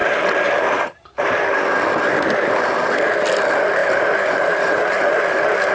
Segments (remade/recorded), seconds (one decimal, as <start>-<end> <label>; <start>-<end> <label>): 0.0-1.4 remade; 1.4-3.8 recorded; 3.8-5.0 remade; 5.0-5.7 recorded